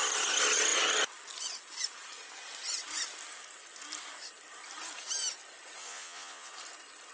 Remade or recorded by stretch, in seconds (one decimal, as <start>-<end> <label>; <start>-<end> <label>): 0.0-5.8 recorded; 5.8-6.5 remade; 6.5-7.1 recorded